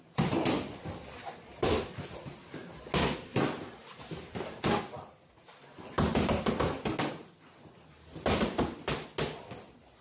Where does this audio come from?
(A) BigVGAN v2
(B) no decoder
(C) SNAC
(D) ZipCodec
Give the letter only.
B